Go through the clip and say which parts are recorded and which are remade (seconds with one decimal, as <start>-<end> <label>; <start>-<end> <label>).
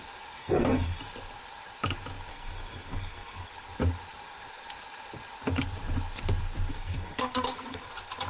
0.0-0.4 recorded; 0.4-1.0 remade; 1.0-2.3 recorded; 2.3-3.5 remade; 3.5-6.7 recorded; 6.7-7.9 remade; 7.9-8.3 recorded